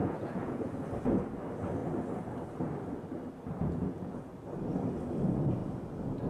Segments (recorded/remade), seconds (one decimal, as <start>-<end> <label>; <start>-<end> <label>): 0.0-0.7 remade; 0.7-3.6 recorded; 3.6-4.3 remade; 4.3-6.3 recorded